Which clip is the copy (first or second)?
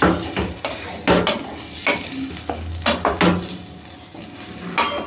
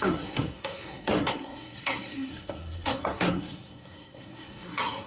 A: second